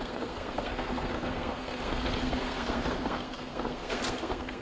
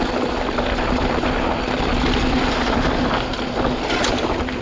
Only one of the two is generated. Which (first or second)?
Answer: first